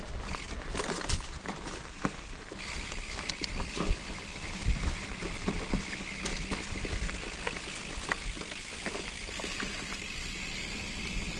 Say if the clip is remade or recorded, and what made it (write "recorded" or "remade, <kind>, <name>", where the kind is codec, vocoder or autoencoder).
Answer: recorded